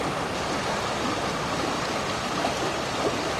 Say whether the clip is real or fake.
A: real